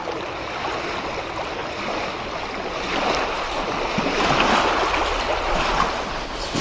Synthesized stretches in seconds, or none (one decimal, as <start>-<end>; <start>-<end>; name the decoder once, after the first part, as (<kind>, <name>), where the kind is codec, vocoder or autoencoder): 1.6-4.7 (vocoder, BigVGAN v2)